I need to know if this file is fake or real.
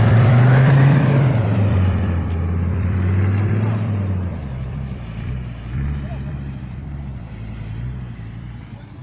fake